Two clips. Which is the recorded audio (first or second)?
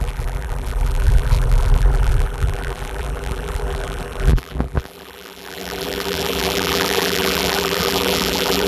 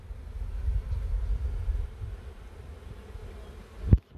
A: second